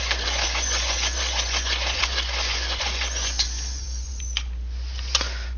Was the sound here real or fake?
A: fake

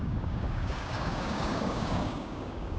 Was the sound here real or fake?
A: fake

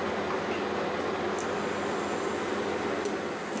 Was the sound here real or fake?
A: real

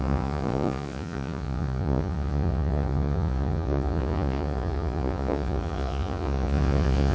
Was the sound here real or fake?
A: fake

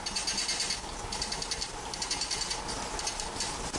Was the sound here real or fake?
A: real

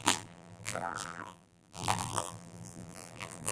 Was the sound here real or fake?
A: fake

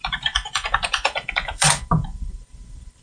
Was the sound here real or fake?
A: fake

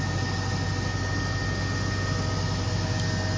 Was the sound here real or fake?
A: real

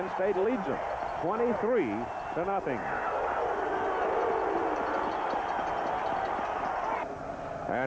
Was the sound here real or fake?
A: real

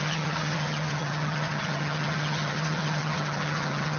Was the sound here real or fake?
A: fake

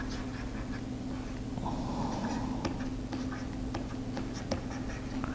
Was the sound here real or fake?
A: real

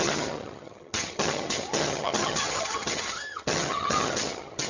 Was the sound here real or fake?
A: fake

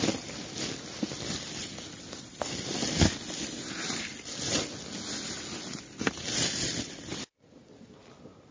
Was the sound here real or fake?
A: real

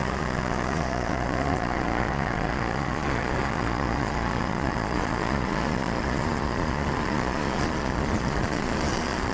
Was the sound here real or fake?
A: fake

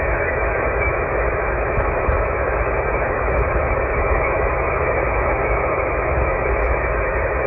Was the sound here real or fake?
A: fake